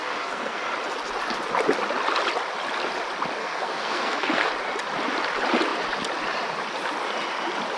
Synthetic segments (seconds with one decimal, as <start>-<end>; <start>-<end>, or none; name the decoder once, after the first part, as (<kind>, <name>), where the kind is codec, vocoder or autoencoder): 0.0-0.6 (codec, SNAC); 3.4-4.5